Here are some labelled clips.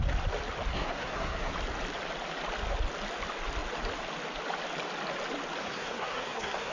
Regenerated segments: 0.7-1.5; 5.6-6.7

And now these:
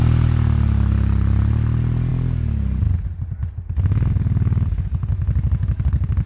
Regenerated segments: none

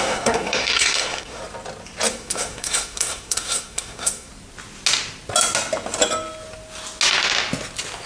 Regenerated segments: 0.0-1.4; 2.1-4.3

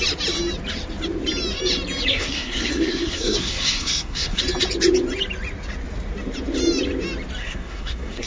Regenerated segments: 2.1-4.4; 7.4-8.3

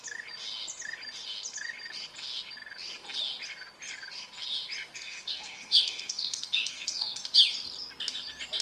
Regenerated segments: 4.9-7.2

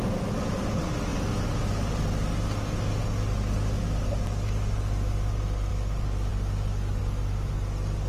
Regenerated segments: none